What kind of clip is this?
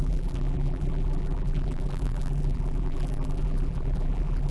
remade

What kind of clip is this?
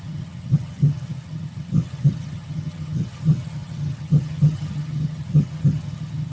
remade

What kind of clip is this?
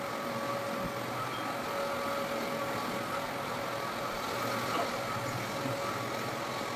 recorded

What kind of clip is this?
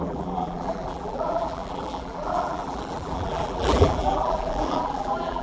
remade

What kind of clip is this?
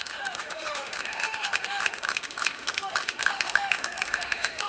remade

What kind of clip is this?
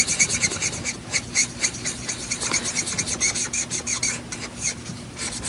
recorded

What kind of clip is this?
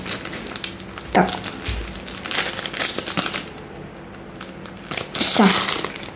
recorded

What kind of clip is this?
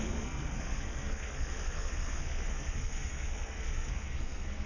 remade